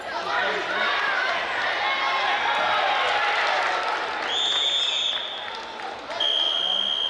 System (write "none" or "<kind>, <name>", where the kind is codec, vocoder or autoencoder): none